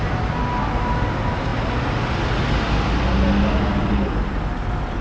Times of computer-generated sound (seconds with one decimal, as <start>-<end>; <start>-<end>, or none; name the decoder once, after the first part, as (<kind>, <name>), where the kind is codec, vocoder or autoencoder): none